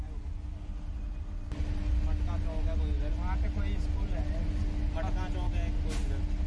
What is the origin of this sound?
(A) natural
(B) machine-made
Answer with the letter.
A